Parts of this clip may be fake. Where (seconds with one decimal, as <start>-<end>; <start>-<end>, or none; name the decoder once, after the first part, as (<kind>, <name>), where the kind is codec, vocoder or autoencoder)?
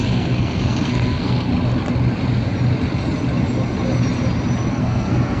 0.0-1.5 (codec, SNAC); 4.7-5.4